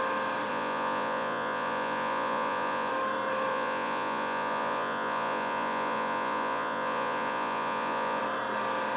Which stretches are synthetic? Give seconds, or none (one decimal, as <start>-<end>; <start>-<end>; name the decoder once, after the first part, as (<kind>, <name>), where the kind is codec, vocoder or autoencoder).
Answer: 0.5-2.9 (vocoder, Vocos); 3.5-8.2